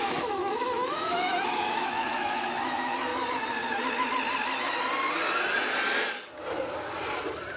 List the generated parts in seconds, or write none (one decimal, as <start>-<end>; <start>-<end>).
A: 0.0-3.1